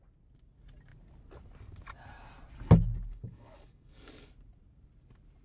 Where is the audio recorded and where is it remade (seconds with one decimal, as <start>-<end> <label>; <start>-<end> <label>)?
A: 0.0-3.1 recorded; 3.1-4.3 remade; 4.3-5.4 recorded